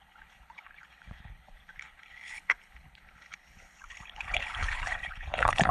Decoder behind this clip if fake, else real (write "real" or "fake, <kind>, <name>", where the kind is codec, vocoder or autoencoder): fake, codec, HILCodec